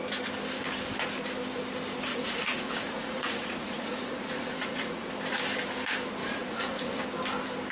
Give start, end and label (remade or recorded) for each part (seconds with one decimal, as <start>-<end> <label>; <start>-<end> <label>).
0.0-2.1 recorded; 2.1-5.1 remade; 5.1-6.2 recorded; 6.2-7.0 remade; 7.0-7.7 recorded